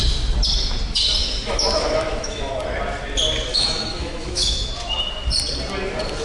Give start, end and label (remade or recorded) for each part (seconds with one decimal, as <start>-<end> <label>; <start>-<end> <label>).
0.0-1.2 recorded; 1.2-2.5 remade; 2.5-3.5 recorded; 3.5-4.7 remade; 4.7-6.2 recorded